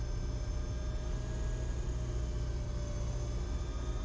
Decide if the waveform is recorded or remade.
recorded